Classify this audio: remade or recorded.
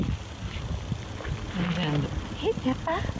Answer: recorded